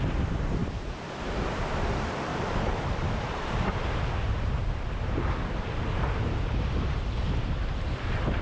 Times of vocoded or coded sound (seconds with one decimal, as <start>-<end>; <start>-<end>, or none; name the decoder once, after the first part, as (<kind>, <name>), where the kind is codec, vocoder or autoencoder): 2.3-7.3 (vocoder, BigVGAN v2)